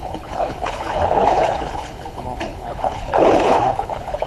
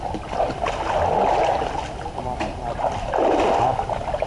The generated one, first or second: first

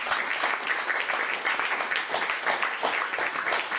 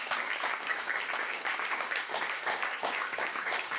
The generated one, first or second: second